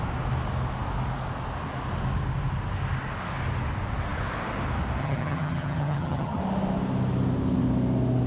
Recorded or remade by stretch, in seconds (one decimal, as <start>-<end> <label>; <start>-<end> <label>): 0.0-5.0 recorded; 5.0-6.4 remade; 6.4-8.3 recorded